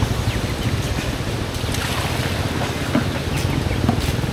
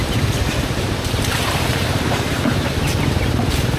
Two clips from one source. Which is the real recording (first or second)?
first